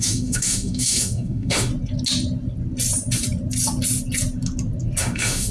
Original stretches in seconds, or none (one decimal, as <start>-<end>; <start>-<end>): 1.7-5.0